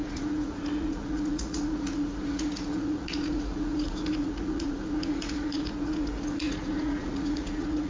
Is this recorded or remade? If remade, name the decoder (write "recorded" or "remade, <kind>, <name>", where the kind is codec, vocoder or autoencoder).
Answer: remade, vocoder, Vocos